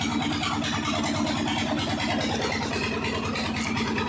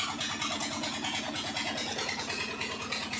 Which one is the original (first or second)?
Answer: first